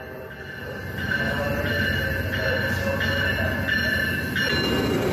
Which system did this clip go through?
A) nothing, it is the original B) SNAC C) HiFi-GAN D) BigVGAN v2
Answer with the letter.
A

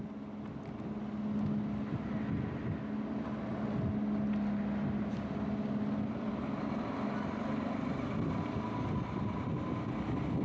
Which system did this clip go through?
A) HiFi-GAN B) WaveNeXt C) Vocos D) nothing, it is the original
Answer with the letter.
D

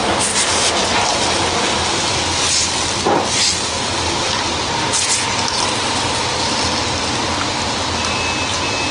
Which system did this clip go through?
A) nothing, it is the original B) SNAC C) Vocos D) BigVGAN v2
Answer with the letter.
A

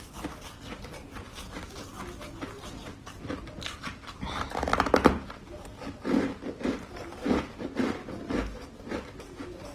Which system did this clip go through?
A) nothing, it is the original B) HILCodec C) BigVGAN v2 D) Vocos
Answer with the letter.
A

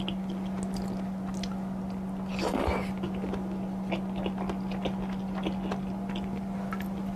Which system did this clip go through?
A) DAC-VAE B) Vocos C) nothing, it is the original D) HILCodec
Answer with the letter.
C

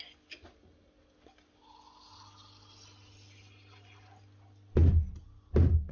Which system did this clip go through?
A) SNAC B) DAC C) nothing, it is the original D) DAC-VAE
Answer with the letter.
C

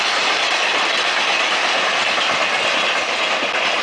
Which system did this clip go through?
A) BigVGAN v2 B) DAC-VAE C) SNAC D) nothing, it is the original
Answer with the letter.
D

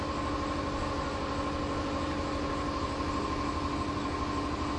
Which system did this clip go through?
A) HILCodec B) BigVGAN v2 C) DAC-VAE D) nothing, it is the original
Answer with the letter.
D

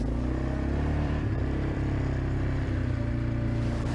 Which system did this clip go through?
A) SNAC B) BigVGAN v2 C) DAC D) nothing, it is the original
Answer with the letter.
B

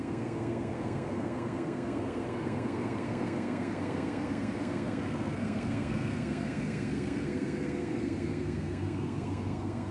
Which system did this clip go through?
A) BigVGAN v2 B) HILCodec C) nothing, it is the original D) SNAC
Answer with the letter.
D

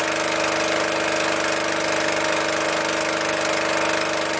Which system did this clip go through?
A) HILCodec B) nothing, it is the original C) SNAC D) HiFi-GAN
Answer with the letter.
B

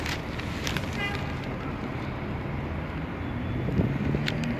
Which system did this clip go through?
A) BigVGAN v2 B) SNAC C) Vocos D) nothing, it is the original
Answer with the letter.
D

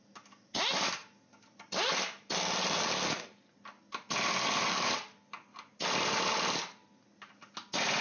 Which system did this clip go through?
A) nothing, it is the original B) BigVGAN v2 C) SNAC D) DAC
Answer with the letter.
A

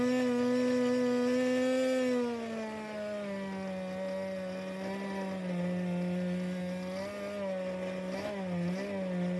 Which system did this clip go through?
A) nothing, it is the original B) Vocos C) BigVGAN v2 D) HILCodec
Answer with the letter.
A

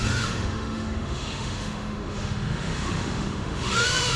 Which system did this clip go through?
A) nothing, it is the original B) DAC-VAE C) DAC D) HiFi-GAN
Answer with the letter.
B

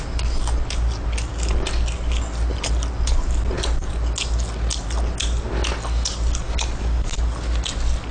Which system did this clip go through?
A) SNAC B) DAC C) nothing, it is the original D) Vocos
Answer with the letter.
C